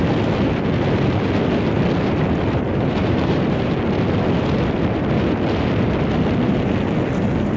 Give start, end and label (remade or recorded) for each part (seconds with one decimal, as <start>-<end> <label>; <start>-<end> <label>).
0.0-2.7 recorded; 2.7-3.7 remade; 3.7-7.6 recorded